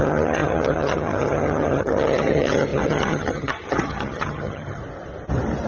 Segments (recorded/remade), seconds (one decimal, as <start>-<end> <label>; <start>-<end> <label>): 0.0-4.8 remade; 4.8-5.7 recorded